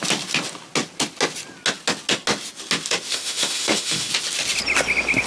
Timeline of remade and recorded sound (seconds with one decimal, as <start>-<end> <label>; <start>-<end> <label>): 0.0-3.1 recorded; 3.1-4.1 remade; 4.1-5.3 recorded